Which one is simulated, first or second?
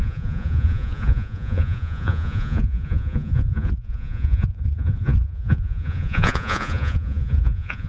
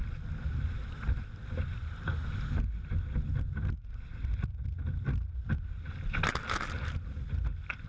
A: first